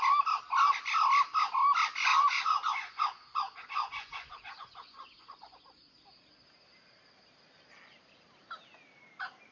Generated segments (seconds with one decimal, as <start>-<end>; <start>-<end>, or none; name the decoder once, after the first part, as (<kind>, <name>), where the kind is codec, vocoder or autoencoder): 2.1-5.9 (vocoder, Vocos)

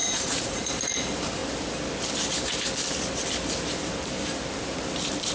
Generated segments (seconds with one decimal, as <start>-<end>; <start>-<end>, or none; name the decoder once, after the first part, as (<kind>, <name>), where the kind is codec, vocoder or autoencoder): 0.0-0.7 (vocoder, Vocos)

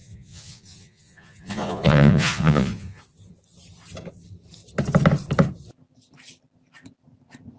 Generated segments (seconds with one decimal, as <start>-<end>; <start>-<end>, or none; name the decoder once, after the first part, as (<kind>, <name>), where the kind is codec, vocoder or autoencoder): 0.0-3.0 (vocoder, Vocos)

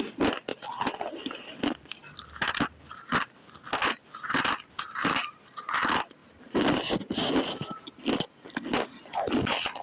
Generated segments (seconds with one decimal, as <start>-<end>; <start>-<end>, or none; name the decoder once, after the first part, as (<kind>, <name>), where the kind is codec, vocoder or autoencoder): none

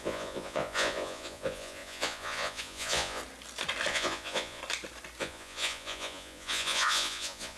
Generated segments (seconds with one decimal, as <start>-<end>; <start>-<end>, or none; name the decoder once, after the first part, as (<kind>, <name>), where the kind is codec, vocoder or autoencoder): 0.0-3.2 (vocoder, Vocos); 3.9-4.6; 5.2-7.6

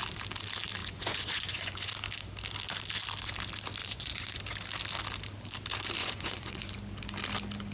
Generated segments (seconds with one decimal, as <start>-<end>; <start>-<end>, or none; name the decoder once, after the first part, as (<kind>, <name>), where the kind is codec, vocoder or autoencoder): 0.8-1.9 (vocoder, Vocos); 3.8-4.4; 6.0-6.7

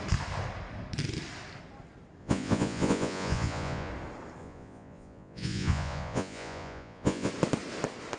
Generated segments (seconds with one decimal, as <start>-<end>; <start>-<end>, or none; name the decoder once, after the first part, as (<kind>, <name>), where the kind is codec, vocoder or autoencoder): 2.2-3.9 (vocoder, Vocos); 4.4-7.3

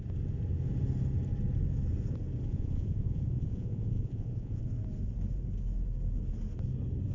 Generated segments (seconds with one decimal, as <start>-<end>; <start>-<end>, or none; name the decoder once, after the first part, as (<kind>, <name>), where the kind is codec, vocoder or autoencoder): 2.5-4.6 (vocoder, Vocos)